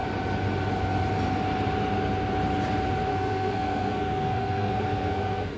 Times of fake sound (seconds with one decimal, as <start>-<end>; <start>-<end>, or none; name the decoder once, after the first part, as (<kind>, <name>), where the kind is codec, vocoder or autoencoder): 3.1-5.6 (codec, SNAC)